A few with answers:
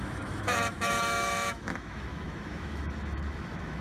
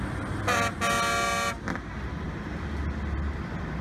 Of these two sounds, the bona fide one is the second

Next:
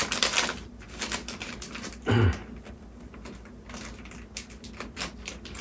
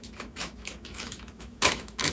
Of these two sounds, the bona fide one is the first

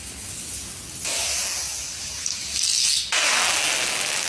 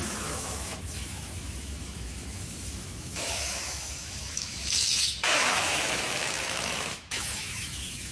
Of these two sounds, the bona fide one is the first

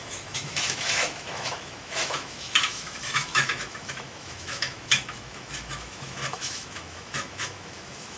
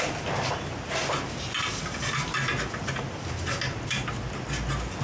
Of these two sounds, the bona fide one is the second